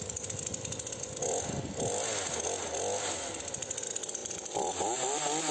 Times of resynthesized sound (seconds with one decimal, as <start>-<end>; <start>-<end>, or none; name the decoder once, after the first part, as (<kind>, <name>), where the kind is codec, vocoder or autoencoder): none